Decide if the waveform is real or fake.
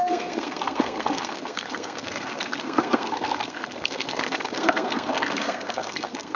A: fake